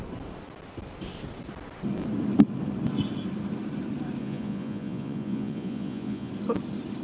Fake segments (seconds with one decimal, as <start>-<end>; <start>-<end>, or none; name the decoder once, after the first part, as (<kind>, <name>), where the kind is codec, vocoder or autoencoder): 4.2-6.3 (vocoder, Vocos)